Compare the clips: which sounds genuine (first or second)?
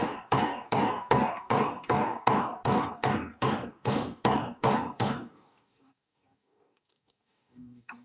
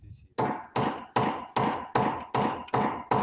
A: second